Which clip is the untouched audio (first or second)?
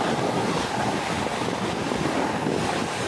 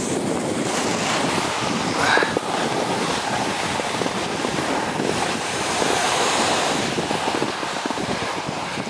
first